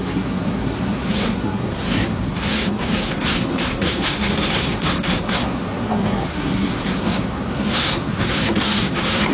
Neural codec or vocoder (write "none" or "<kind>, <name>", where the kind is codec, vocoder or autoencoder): codec, SNAC